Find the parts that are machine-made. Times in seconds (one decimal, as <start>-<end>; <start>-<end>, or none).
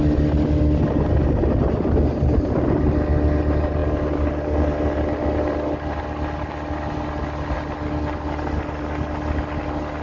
none